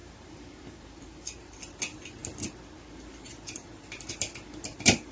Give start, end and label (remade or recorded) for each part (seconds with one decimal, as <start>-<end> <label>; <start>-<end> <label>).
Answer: 0.0-1.6 remade; 1.6-5.1 recorded